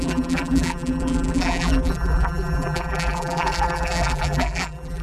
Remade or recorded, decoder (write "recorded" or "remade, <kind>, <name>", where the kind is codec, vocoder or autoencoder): remade, vocoder, BigVGAN v2